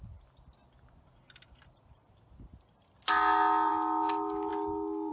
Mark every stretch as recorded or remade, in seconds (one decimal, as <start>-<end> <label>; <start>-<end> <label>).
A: 0.0-5.1 recorded